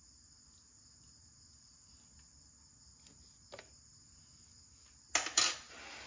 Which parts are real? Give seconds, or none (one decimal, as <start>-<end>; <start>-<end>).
0.0-6.1